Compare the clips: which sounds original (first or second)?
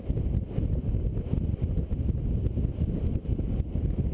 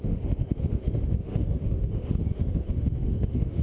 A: first